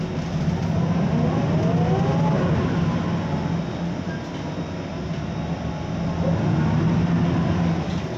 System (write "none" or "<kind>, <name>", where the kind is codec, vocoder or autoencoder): none